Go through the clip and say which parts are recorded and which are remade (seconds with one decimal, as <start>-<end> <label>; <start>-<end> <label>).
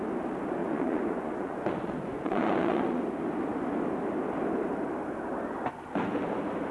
0.0-0.6 recorded; 0.6-3.0 remade; 3.0-6.7 recorded